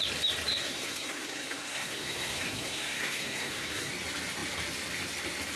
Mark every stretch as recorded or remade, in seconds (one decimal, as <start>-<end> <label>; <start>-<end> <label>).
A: 0.0-0.5 recorded; 0.5-3.9 remade; 3.9-5.6 recorded